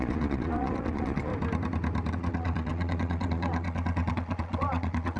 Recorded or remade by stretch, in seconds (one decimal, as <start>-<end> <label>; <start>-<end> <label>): 0.0-1.3 remade; 1.3-2.1 recorded; 2.1-5.2 remade

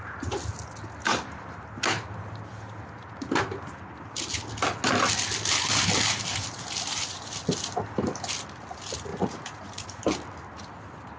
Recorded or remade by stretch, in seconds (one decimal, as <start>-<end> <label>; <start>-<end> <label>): 0.0-9.1 recorded; 9.1-10.0 remade; 10.0-11.2 recorded

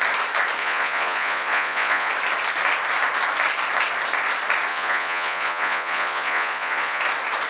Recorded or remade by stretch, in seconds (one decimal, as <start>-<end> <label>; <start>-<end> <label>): 0.0-0.6 recorded; 0.6-2.1 remade; 2.1-4.7 recorded; 4.7-7.0 remade; 7.0-7.5 recorded

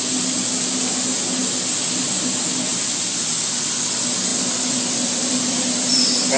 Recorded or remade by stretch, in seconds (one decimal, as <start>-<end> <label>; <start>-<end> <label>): 0.0-6.4 recorded